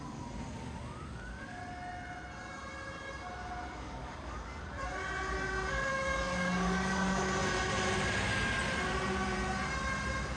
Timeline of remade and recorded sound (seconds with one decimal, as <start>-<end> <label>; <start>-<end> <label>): 0.0-1.6 remade; 1.6-3.7 recorded; 3.7-4.5 remade; 4.5-5.7 recorded; 5.7-7.4 remade; 7.4-10.4 recorded